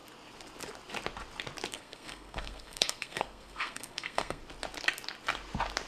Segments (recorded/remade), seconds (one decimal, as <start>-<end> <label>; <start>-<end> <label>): 0.0-1.7 recorded; 1.7-4.4 remade; 4.4-5.9 recorded